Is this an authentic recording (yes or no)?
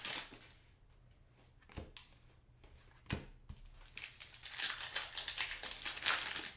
yes